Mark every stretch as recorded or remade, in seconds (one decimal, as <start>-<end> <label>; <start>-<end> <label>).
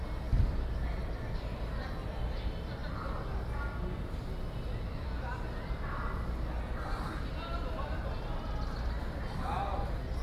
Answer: 0.0-10.2 recorded